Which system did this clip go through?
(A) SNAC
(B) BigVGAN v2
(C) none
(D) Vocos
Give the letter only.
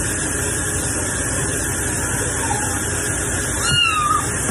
C